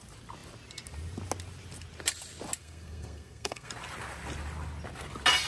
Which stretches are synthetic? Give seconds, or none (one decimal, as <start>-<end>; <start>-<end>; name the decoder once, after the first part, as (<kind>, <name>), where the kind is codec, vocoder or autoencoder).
2.6-3.7 (codec, SNAC)

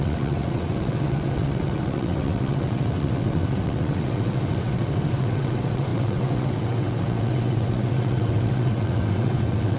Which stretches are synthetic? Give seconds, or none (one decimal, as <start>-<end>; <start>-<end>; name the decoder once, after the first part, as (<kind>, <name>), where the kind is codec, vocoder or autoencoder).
0.0-9.8 (vocoder, WaveNeXt)

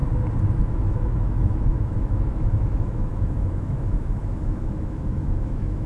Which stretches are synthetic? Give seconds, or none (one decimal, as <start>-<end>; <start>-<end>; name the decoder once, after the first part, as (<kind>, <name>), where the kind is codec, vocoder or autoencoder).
0.6-5.9 (autoencoder, DAC-VAE)

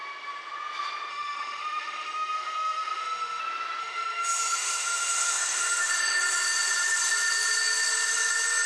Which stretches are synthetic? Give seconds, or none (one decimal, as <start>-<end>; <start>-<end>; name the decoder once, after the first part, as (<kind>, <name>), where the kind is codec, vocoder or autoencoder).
1.1-3.4 (autoencoder, DAC-VAE); 3.8-5.9

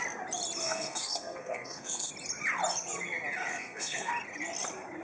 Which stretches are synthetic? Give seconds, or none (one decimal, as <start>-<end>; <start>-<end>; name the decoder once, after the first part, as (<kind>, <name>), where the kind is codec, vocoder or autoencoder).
0.6-2.1 (codec, SNAC); 3.5-4.1

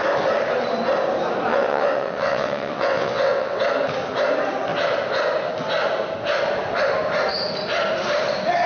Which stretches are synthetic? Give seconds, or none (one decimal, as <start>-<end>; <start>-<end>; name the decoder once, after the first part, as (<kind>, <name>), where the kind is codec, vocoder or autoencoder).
1.5-3.6 (vocoder, WaveNeXt)

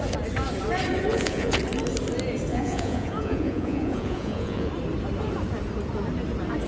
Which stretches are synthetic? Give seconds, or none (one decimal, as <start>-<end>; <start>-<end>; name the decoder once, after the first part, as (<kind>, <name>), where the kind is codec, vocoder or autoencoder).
1.1-1.6 (vocoder, Vocos); 2.5-4.7

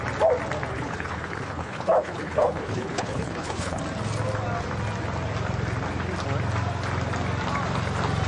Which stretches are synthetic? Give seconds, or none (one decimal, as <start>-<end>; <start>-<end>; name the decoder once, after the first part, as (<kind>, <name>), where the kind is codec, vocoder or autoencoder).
0.7-3.8 (codec, HILCodec)